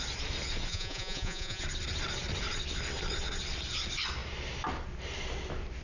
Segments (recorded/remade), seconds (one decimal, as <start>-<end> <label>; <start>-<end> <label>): 0.0-0.7 recorded; 0.7-1.6 remade; 1.6-5.8 recorded